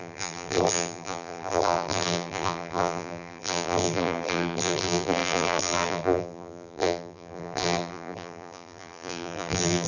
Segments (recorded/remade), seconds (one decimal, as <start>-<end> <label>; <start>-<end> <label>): 0.0-9.9 remade

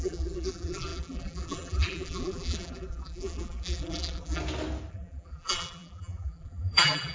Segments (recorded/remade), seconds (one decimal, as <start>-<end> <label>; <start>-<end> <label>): 0.0-4.4 remade; 4.4-4.9 recorded; 4.9-7.1 remade

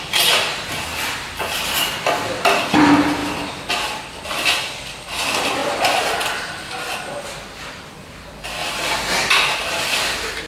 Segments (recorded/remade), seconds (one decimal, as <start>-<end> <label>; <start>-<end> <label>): 0.0-10.5 recorded

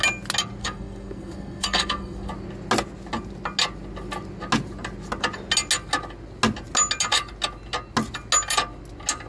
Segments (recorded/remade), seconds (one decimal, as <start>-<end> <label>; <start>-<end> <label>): 0.0-0.6 recorded; 0.6-2.3 remade; 2.3-9.3 recorded

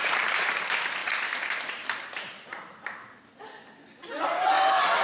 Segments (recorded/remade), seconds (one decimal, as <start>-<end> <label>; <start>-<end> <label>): 0.0-0.6 remade; 0.6-1.0 recorded; 1.0-3.2 remade; 3.2-5.0 recorded

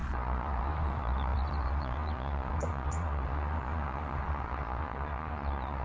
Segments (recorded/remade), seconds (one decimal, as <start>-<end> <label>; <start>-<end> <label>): 0.0-5.8 remade